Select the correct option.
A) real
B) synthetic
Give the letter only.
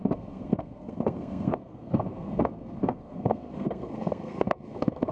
B